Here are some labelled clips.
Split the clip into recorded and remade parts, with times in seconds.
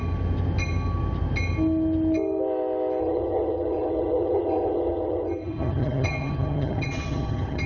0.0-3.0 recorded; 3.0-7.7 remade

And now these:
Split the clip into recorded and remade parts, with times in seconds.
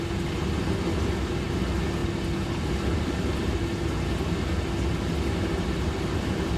0.0-6.6 recorded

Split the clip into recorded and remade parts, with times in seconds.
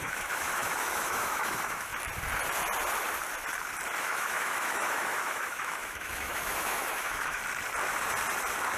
0.0-1.9 remade; 1.9-4.0 recorded; 4.0-7.4 remade; 7.4-8.8 recorded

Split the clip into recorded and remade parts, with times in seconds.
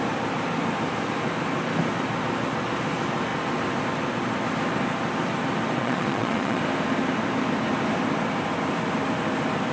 0.0-5.8 recorded; 5.8-6.6 remade; 6.6-9.7 recorded